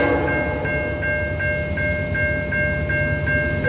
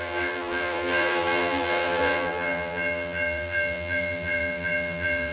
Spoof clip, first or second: second